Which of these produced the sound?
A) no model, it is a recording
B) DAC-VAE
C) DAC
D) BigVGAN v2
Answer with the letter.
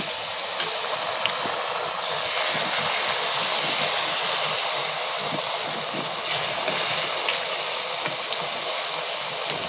A